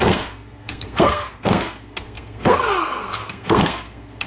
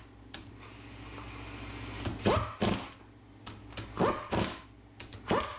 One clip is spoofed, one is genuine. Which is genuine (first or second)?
second